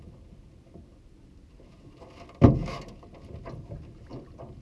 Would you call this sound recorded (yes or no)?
yes